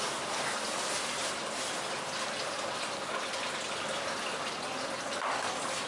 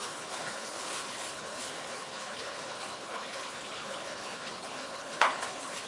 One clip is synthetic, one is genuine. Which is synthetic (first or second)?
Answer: second